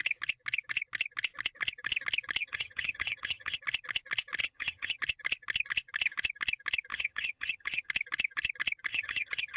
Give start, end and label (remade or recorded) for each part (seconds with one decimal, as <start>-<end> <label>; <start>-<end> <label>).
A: 0.0-2.4 recorded; 2.4-3.6 remade; 3.6-4.4 recorded; 4.4-5.0 remade; 5.0-6.9 recorded; 6.9-7.9 remade; 7.9-8.9 recorded; 8.9-9.6 remade

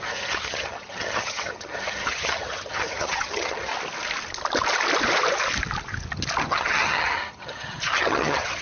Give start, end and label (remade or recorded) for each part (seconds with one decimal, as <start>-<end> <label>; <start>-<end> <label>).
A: 0.0-3.7 remade; 3.7-6.4 recorded; 6.4-8.6 remade

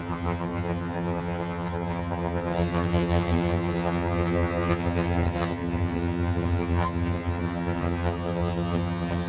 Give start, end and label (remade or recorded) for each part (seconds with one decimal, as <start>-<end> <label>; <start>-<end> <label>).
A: 0.0-9.3 remade